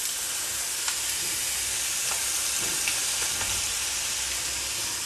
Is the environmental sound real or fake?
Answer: real